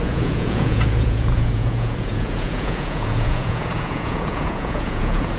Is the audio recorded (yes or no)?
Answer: no